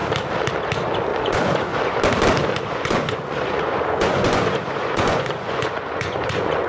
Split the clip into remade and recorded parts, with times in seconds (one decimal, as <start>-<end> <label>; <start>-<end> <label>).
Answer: 0.0-1.1 recorded; 1.1-1.8 remade; 1.8-2.5 recorded; 2.5-6.7 remade